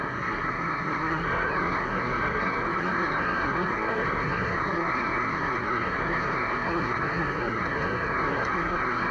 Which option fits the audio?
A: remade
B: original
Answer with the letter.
A